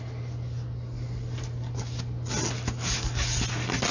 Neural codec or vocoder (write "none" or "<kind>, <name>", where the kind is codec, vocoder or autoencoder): none